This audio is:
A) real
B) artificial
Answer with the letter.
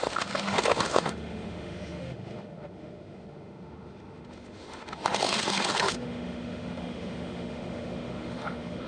B